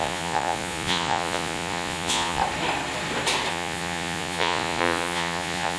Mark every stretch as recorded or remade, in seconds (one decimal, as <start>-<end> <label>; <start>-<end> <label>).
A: 0.0-2.4 remade; 2.4-3.5 recorded; 3.5-5.8 remade